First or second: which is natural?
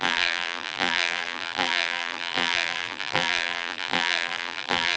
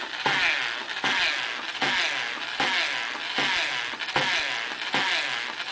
second